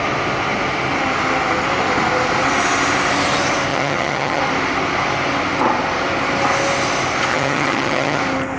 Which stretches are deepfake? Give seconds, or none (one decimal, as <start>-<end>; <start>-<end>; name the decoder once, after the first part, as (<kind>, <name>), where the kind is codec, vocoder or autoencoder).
3.7-4.4 (vocoder, HiFi-GAN); 7.3-8.2